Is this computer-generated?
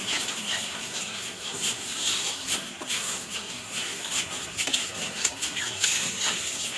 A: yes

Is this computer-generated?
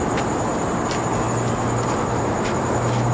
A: no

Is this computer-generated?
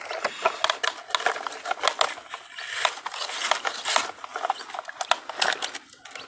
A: no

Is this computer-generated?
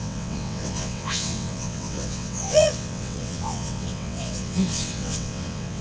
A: yes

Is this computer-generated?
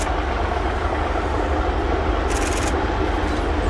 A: no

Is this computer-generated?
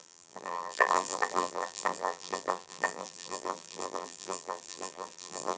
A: yes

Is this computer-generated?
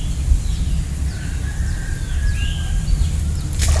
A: no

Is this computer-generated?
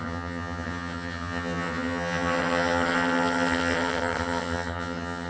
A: yes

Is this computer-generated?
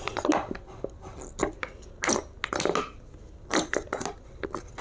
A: no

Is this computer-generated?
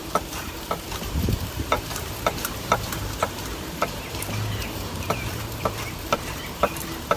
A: yes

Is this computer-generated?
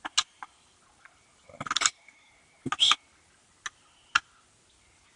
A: no